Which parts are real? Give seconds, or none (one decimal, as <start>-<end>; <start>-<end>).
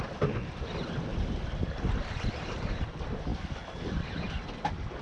0.0-5.0